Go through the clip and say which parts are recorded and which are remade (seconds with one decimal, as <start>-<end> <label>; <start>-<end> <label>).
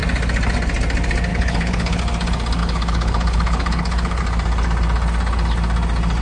0.0-1.3 recorded; 1.3-2.0 remade; 2.0-2.6 recorded; 2.6-4.2 remade; 4.2-6.2 recorded